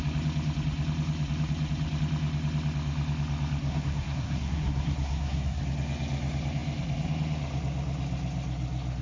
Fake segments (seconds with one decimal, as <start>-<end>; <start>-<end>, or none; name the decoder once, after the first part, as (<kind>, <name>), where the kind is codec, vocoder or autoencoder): 3.6-5.6 (codec, SNAC)